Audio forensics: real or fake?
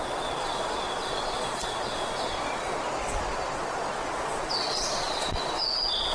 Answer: fake